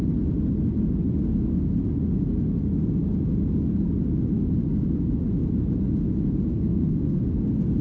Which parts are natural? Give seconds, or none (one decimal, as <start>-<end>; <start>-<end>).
0.0-6.5; 7.2-7.8